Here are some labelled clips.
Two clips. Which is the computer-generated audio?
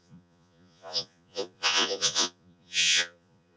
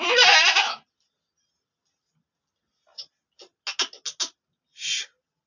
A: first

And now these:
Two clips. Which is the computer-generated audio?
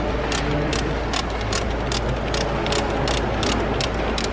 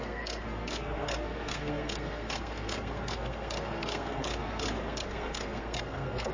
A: second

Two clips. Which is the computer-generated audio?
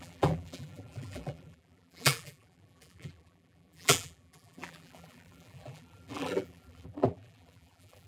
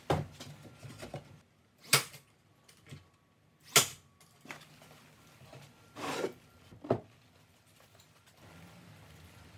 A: first